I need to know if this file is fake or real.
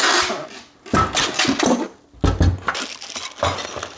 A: real